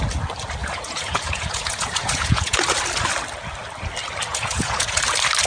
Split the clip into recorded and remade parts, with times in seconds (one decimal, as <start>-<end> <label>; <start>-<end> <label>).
0.0-0.6 recorded; 0.6-2.6 remade; 2.6-4.3 recorded; 4.3-5.0 remade; 5.0-5.5 recorded